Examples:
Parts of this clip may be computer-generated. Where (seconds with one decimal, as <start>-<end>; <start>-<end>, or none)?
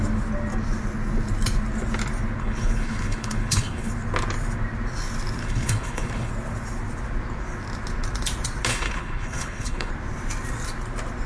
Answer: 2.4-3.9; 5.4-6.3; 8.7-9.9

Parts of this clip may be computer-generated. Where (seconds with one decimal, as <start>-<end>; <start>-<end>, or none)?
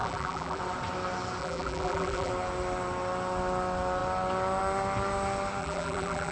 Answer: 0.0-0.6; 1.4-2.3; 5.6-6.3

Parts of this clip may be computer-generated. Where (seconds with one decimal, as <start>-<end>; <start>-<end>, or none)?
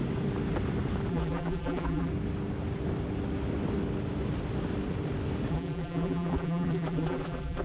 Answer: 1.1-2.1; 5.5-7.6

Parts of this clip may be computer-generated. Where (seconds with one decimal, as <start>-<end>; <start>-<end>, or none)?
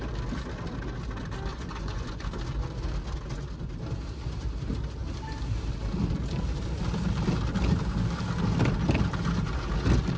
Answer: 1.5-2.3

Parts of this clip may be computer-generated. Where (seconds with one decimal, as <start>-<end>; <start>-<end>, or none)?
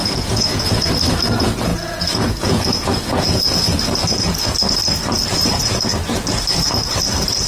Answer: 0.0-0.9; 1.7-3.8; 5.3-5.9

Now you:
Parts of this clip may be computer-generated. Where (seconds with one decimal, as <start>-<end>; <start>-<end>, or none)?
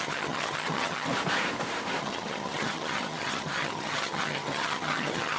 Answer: 0.0-1.1; 2.0-5.4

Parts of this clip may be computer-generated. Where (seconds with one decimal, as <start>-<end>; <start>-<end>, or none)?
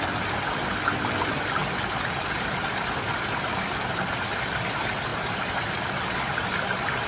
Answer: none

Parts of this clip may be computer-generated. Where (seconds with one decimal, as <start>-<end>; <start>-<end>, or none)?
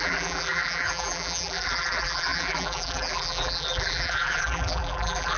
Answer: 0.0-5.4